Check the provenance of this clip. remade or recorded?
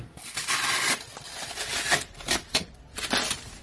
recorded